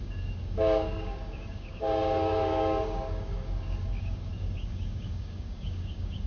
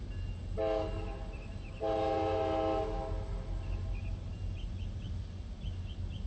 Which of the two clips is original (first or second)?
second